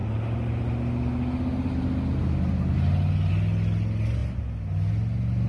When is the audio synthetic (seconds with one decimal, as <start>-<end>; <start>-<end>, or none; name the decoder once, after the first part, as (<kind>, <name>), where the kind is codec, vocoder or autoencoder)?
none